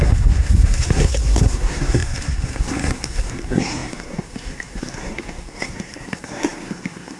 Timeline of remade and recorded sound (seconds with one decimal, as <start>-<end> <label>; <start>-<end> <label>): 0.0-7.2 remade